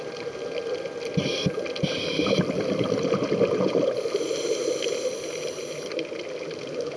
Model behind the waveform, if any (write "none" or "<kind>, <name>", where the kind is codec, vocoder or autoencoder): none